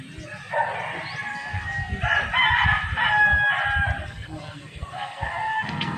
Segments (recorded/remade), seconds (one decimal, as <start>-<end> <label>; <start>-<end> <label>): 0.0-1.3 recorded; 1.3-2.0 remade; 2.0-4.0 recorded; 4.0-6.0 remade